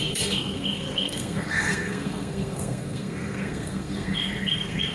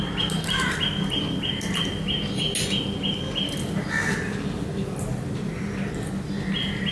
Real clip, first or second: second